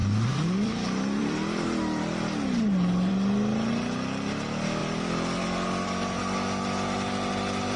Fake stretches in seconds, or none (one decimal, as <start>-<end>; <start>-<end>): 0.0-2.2; 4.8-6.2